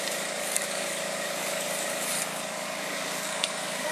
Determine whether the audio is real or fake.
fake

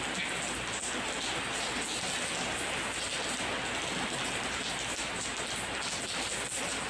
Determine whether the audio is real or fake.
real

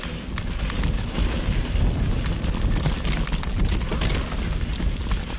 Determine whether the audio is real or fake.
real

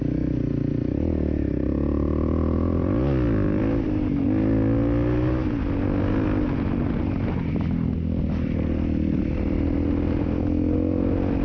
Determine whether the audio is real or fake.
real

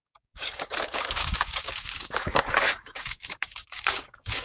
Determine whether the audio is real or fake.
fake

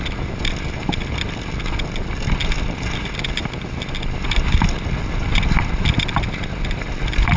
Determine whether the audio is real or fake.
real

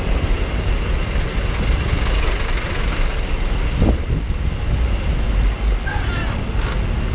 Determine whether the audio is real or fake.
real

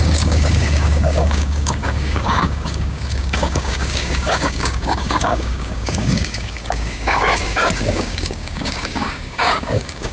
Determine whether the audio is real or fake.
fake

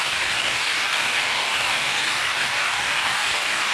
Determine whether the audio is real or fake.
fake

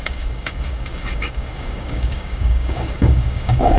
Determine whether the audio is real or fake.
fake